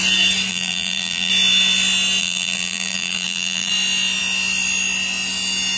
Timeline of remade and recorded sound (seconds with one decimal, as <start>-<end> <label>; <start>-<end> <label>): 0.0-0.5 recorded; 0.5-1.3 remade; 1.3-2.2 recorded; 2.2-3.7 remade; 3.7-5.8 recorded